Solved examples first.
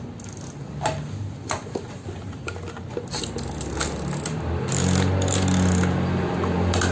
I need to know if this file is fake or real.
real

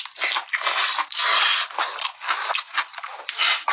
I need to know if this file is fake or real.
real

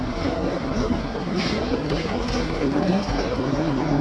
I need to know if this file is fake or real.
fake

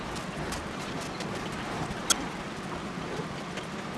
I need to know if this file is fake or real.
real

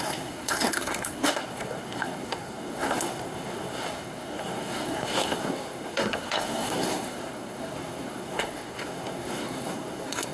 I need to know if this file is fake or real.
fake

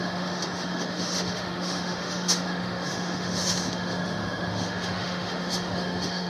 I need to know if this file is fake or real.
fake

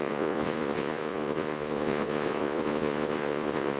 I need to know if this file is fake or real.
fake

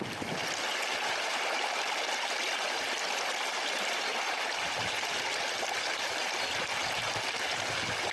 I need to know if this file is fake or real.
real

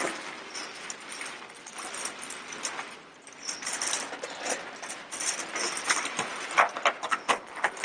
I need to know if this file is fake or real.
real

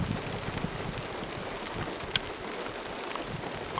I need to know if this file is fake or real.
real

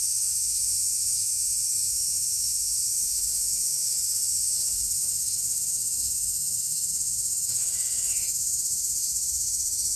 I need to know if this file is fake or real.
fake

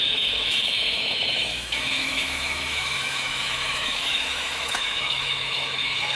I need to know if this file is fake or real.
fake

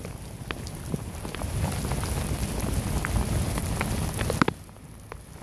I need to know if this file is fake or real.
real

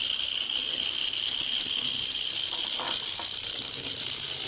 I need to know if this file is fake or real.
real